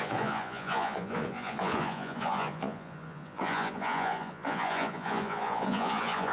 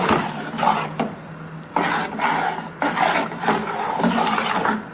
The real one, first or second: second